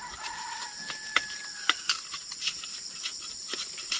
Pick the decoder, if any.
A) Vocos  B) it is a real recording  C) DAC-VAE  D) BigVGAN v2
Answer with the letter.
B